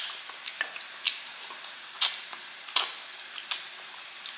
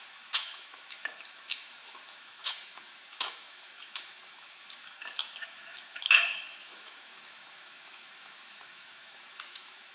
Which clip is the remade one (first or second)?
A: second